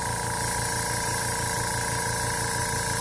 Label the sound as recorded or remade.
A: recorded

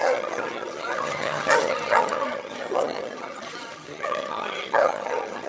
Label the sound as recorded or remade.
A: remade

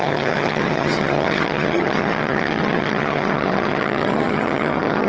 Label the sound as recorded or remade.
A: remade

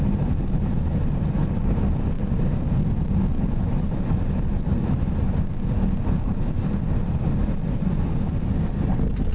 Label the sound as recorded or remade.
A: recorded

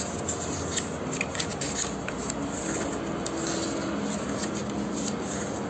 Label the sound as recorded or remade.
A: recorded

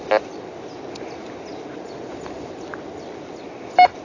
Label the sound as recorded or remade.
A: recorded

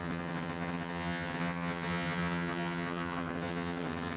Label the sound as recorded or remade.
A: remade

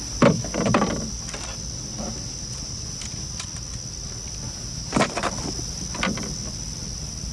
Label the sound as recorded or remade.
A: recorded